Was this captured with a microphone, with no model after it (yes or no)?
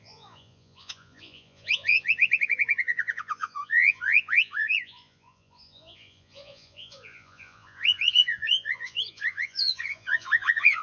no